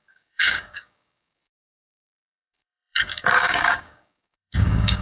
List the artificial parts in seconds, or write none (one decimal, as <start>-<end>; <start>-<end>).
0.0-5.0